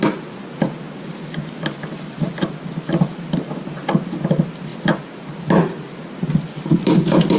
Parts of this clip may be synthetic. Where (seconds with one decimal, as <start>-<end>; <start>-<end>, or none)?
none